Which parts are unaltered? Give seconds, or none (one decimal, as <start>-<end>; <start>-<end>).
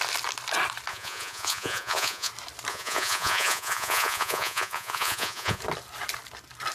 0.0-0.9; 2.3-2.7; 5.6-6.7